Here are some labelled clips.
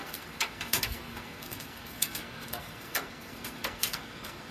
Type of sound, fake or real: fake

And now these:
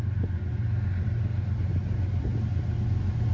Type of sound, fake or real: real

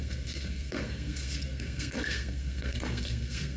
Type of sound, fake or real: fake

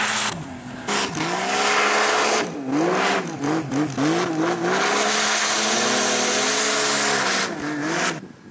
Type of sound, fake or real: real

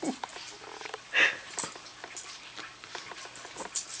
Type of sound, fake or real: real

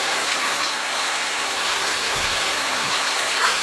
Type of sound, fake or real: fake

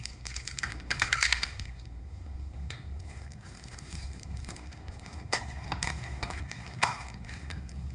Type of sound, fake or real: fake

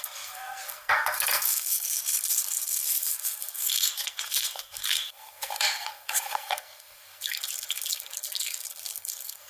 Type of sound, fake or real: fake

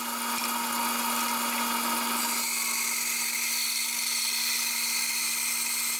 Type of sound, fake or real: real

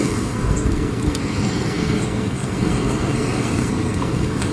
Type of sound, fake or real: fake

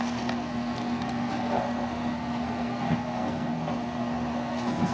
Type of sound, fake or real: fake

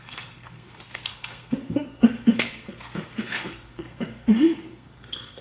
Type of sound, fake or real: fake